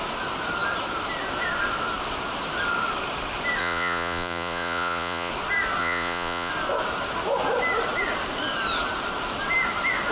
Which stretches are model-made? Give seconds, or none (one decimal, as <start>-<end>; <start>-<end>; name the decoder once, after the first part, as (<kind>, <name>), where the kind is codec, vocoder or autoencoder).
3.6-5.3 (vocoder, Vocos); 5.8-6.5